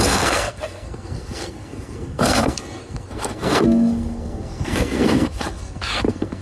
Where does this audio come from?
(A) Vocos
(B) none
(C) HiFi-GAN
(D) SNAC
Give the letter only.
D